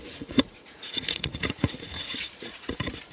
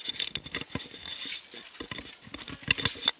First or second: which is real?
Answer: second